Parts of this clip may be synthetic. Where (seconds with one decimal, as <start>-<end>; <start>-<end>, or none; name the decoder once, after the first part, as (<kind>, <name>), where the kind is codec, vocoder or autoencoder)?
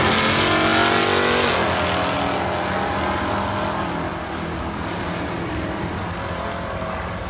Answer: none